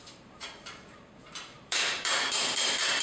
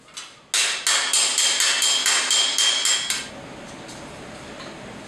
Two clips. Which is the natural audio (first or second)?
second